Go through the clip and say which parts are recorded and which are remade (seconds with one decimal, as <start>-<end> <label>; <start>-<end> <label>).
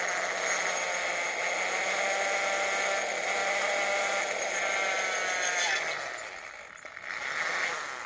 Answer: 0.0-8.1 recorded